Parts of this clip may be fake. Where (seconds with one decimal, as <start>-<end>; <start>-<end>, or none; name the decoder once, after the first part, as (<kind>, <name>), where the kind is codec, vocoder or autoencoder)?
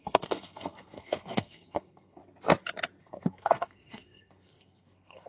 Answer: 0.0-2.2 (codec, SNAC); 3.0-5.3